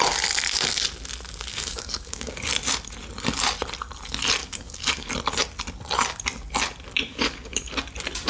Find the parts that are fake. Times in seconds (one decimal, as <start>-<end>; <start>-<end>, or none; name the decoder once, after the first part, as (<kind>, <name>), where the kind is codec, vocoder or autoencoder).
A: 1.5-2.5 (codec, DAC); 4.4-5.1; 7.1-7.7